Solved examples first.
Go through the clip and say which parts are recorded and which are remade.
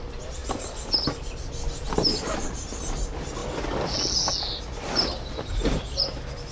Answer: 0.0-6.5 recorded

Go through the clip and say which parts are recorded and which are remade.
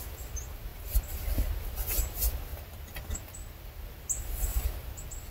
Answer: 0.0-0.7 recorded; 0.7-1.6 remade; 1.6-2.5 recorded; 2.5-3.3 remade; 3.3-4.5 recorded; 4.5-5.3 remade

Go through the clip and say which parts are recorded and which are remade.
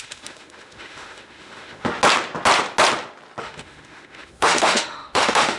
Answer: 0.0-2.0 remade; 2.0-3.4 recorded; 3.4-5.6 remade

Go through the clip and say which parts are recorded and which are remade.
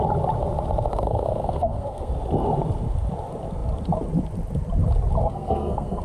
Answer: 0.0-0.9 recorded; 0.9-2.1 remade; 2.1-5.2 recorded; 5.2-6.0 remade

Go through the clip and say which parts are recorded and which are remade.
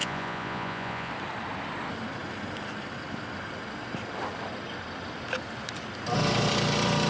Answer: 0.0-1.1 remade; 1.1-7.1 recorded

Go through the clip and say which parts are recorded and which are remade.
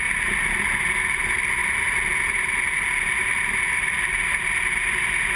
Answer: 0.0-5.4 recorded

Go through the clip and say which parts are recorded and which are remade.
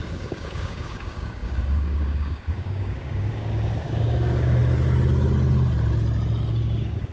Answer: 0.0-4.6 remade; 4.6-6.5 recorded; 6.5-7.1 remade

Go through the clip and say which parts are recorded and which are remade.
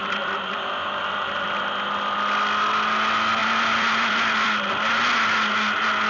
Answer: 0.0-1.3 remade; 1.3-3.4 recorded; 3.4-4.7 remade; 4.7-6.1 recorded